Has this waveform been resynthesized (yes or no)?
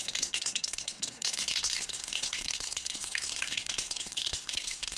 yes